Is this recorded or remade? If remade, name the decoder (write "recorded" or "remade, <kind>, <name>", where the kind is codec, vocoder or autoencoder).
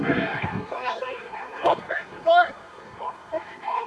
remade, codec, SNAC